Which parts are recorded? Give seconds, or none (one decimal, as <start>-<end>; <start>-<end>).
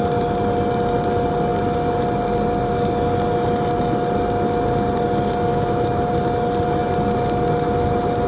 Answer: 0.0-5.5; 6.1-8.3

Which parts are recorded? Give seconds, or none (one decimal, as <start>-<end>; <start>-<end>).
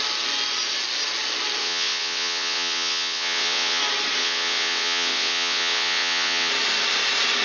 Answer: 0.0-1.6; 3.8-4.2; 6.5-7.4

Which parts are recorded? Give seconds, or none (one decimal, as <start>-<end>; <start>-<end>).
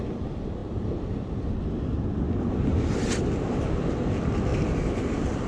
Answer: 0.0-5.5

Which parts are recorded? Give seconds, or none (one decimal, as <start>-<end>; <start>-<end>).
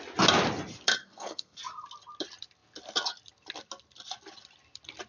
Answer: 0.0-1.0; 1.6-5.1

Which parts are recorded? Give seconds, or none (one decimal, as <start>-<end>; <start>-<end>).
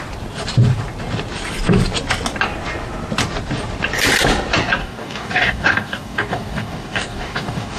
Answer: 0.0-4.8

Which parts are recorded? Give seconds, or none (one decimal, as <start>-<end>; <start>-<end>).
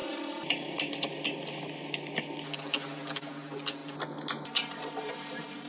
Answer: 0.0-5.7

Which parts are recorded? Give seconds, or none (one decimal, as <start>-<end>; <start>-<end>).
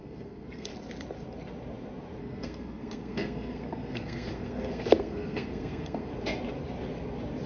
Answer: 0.7-2.2; 6.1-7.5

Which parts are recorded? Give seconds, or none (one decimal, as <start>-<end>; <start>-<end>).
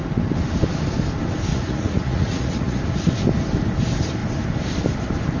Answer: 0.0-1.5; 2.8-5.4